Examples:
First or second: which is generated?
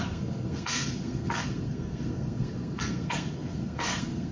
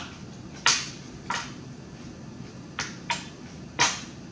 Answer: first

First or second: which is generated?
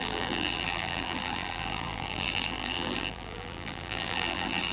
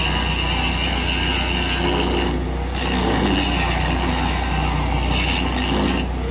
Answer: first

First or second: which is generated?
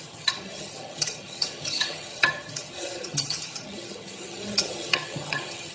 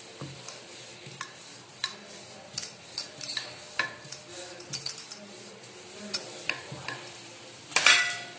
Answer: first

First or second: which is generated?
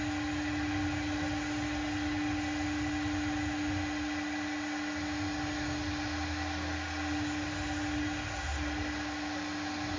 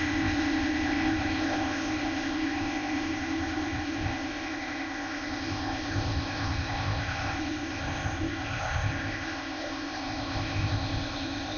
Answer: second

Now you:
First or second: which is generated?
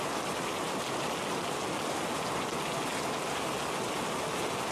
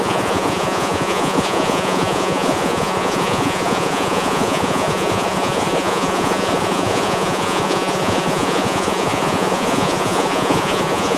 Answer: second